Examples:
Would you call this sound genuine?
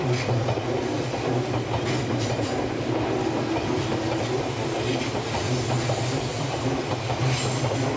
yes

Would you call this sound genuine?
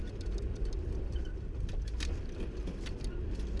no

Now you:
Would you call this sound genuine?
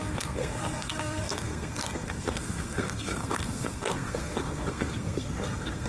no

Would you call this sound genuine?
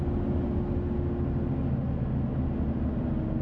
yes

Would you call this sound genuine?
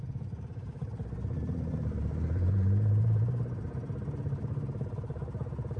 no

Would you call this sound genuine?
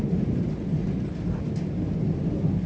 yes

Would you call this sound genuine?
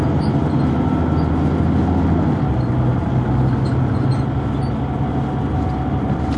yes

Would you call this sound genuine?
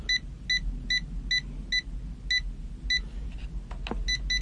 yes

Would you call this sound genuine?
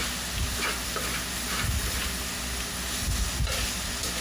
yes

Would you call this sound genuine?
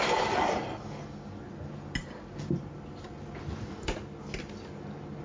yes